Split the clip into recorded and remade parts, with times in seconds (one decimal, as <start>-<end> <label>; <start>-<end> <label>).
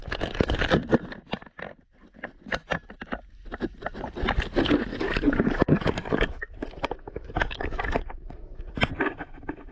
0.0-0.8 remade; 0.8-4.9 recorded; 4.9-8.8 remade; 8.8-9.7 recorded